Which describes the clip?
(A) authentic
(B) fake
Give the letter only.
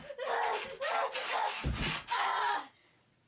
A